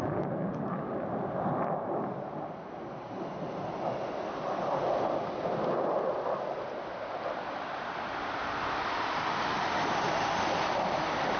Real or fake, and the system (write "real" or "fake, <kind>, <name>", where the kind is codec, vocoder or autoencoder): real